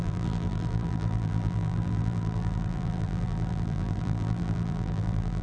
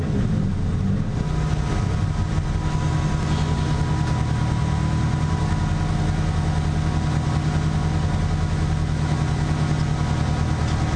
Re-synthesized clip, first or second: first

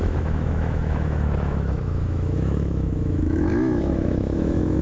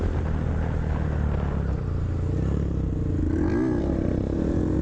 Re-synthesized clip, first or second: first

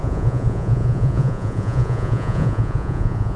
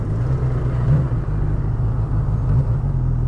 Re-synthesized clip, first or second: first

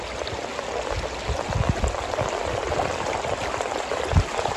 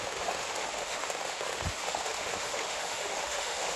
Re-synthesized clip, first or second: second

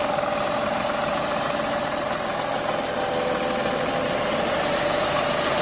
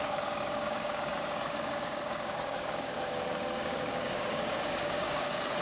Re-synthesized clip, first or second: second